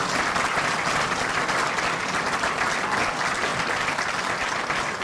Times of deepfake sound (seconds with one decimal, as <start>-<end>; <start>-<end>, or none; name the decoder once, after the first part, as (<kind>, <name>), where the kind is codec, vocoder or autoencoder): none